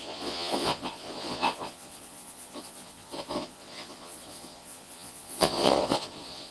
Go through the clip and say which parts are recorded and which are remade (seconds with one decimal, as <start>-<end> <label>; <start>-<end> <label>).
0.0-6.5 remade